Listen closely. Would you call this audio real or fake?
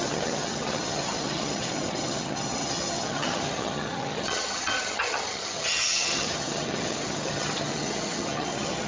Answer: fake